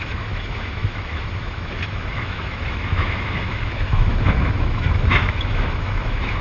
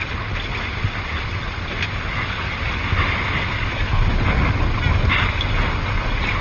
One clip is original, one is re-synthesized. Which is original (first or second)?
second